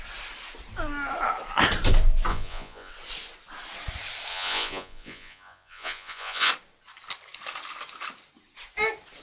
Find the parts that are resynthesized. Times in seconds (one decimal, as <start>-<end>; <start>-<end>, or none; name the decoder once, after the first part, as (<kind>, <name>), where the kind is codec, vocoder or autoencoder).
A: 2.3-2.9 (vocoder, Vocos); 4.3-6.5